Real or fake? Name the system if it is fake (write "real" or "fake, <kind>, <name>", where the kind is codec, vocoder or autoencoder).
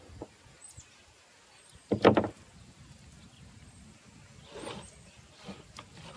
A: real